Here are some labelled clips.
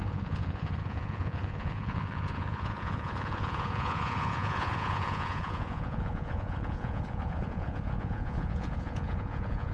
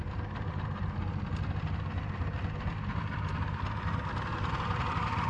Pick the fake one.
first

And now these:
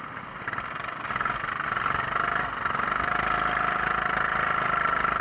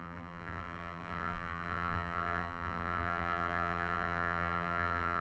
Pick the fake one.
second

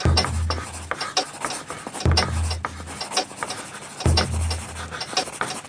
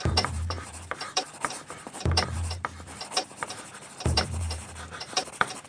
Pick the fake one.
second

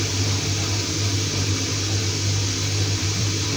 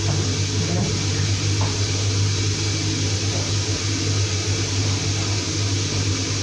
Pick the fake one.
first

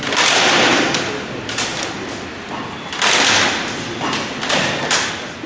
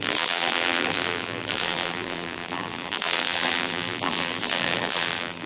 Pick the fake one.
second